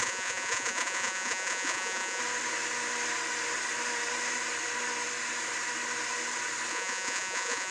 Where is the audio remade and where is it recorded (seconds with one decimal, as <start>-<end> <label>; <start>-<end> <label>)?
0.0-2.2 remade; 2.2-6.7 recorded; 6.7-7.7 remade